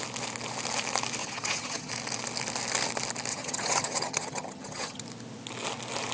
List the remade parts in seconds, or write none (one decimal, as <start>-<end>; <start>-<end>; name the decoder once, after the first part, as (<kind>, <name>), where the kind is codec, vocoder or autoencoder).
1.2-1.9 (vocoder, HiFi-GAN); 3.3-5.0